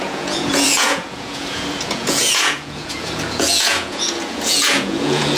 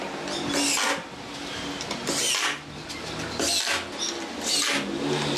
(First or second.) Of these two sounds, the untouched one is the second